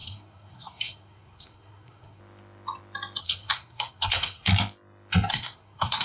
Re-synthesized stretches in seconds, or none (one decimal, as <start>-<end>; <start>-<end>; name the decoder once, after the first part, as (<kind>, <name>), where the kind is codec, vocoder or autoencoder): 0.0-2.2 (codec, SNAC); 3.2-4.5; 5.3-6.0